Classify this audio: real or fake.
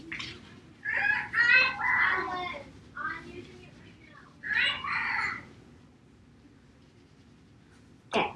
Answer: real